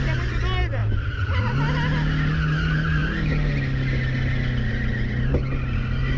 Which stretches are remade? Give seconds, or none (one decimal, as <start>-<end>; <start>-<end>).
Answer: 0.8-1.4